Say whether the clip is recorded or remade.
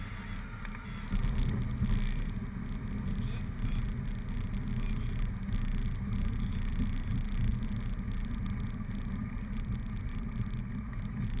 recorded